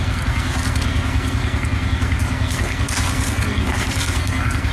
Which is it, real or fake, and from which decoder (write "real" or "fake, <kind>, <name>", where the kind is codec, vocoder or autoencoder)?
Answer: fake, codec, SNAC